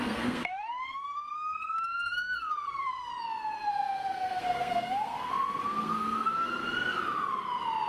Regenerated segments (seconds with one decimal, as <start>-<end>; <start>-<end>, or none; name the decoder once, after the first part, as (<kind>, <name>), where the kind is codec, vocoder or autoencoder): 0.0-3.1 (codec, SNAC); 3.7-6.6